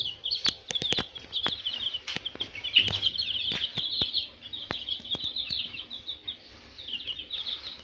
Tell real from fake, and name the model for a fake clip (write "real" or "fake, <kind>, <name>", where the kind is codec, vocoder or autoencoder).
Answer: real